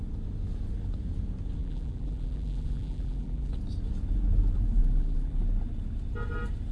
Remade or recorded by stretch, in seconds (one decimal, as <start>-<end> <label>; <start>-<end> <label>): 0.0-1.6 recorded; 1.6-3.5 remade; 3.5-4.8 recorded; 4.8-5.4 remade; 5.4-6.7 recorded